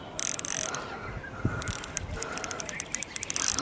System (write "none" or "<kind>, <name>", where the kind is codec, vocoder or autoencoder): none